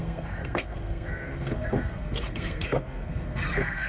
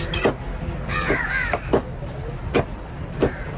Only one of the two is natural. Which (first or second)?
second